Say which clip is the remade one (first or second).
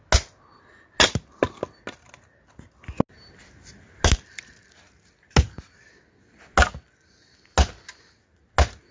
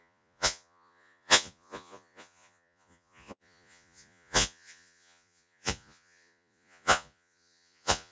second